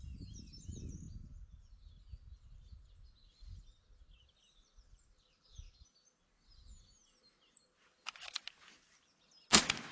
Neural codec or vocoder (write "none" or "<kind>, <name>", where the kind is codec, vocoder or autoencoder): none